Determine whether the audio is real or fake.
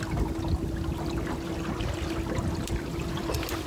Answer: real